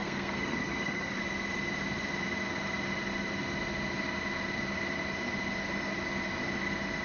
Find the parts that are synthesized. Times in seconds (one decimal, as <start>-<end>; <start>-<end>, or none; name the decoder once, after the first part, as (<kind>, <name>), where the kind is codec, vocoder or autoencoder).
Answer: 0.0-1.2 (codec, SNAC)